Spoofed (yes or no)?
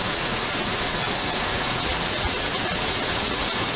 yes